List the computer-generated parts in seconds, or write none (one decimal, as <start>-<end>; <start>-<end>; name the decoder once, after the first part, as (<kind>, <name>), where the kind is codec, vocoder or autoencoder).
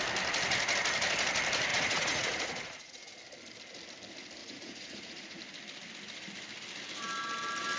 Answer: 1.7-3.1 (vocoder, Vocos); 4.4-5.4